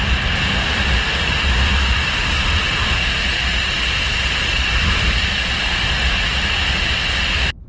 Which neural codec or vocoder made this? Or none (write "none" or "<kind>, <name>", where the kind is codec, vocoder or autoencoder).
none